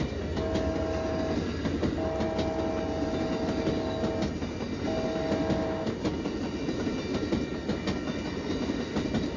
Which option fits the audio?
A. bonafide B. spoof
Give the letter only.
A